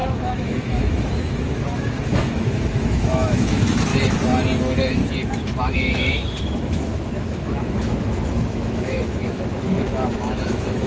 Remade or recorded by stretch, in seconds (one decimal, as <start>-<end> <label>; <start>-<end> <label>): 0.0-3.9 remade; 3.9-4.6 recorded; 4.6-5.0 remade; 5.0-5.6 recorded; 5.6-10.9 remade